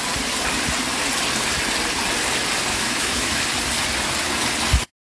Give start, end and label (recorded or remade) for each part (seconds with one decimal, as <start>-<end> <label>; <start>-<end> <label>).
0.0-2.7 recorded; 2.7-3.4 remade; 3.4-5.1 recorded